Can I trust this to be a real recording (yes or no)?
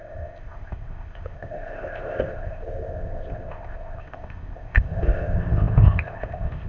no